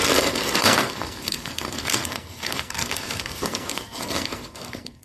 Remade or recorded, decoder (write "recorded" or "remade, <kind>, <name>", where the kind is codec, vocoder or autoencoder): remade, codec, SNAC